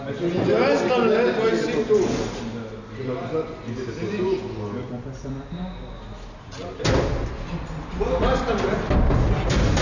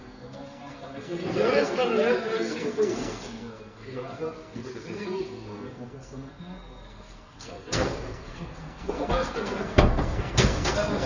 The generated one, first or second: second